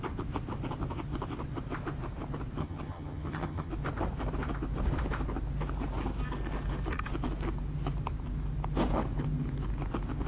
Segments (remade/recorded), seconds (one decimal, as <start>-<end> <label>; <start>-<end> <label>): 0.0-2.6 recorded; 2.6-3.7 remade; 3.7-10.3 recorded